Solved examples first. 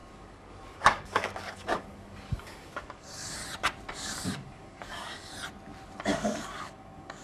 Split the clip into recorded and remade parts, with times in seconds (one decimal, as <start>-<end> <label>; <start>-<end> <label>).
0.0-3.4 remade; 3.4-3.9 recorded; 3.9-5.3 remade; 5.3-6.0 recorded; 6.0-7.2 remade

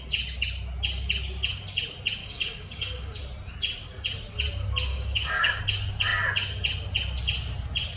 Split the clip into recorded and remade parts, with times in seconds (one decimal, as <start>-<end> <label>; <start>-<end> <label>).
0.0-2.2 recorded; 2.2-3.2 remade; 3.2-4.9 recorded; 4.9-5.6 remade; 5.6-8.0 recorded

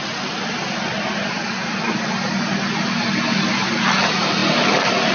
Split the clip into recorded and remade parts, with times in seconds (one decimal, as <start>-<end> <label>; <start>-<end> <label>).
0.0-5.1 recorded

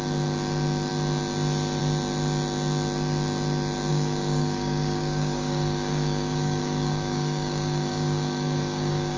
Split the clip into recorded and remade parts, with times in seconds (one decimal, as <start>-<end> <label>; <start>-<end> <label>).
0.0-3.9 recorded; 3.9-9.2 remade

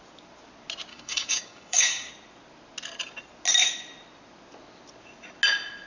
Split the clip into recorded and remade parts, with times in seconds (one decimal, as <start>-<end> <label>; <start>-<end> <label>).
0.0-0.9 recorded; 0.9-2.1 remade; 2.1-5.9 recorded